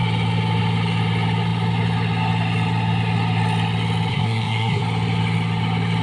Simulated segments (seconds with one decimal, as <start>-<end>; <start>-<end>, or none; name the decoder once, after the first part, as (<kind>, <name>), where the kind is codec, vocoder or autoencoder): 4.1-4.8 (codec, SNAC)